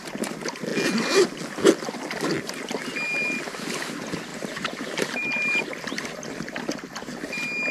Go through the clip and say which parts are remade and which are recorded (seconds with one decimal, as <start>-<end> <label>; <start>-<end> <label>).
0.0-4.3 recorded; 4.3-6.3 remade; 6.3-7.7 recorded

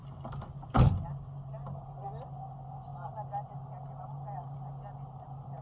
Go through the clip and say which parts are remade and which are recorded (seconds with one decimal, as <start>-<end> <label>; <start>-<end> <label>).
0.0-5.6 recorded

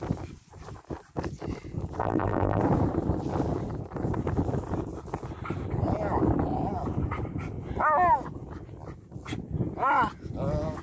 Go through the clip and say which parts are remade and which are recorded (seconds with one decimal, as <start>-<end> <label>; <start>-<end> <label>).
0.0-2.0 recorded; 2.0-2.6 remade; 2.6-10.8 recorded

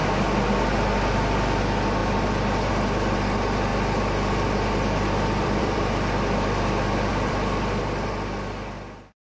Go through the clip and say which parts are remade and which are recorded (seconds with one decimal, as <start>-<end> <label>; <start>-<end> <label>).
0.0-2.0 recorded; 2.0-2.7 remade; 2.7-3.7 recorded; 3.7-5.8 remade; 5.8-7.1 recorded; 7.1-7.8 remade; 7.8-9.4 recorded

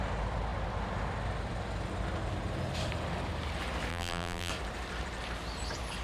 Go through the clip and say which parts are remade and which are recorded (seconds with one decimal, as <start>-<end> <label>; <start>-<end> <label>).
0.0-3.9 recorded; 3.9-4.5 remade; 4.5-6.0 recorded